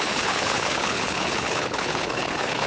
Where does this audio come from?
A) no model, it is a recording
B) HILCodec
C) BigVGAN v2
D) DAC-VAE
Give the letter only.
B